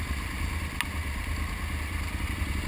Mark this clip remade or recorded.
recorded